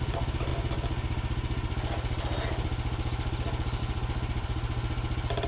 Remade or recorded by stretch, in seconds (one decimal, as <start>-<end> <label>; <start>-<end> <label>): 0.0-5.5 recorded